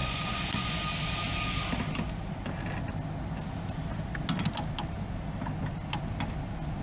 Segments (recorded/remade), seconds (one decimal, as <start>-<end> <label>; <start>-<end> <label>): 0.0-0.8 remade; 0.8-6.8 recorded